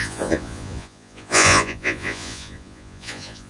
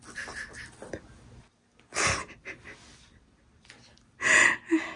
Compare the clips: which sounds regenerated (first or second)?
first